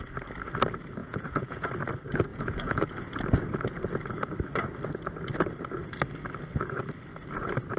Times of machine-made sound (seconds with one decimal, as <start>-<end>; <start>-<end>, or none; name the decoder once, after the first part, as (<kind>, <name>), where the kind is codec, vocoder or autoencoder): 1.0-1.7 (vocoder, Vocos); 2.3-2.9